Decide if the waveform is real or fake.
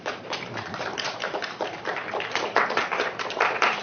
fake